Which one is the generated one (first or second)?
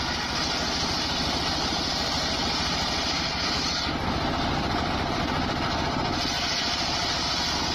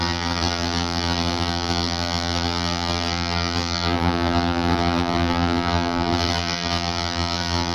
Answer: second